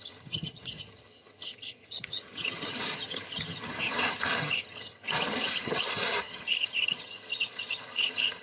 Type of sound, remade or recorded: remade